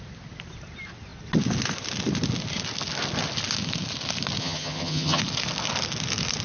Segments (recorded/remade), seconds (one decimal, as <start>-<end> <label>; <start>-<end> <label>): 0.0-4.4 recorded; 4.4-5.2 remade; 5.2-6.4 recorded